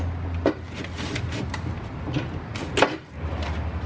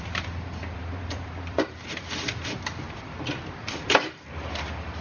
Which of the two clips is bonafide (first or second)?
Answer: first